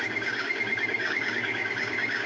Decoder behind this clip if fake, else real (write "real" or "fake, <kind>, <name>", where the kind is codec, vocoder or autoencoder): fake, codec, DAC